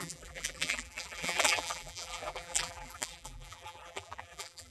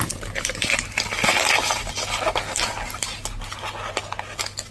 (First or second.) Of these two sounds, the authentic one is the second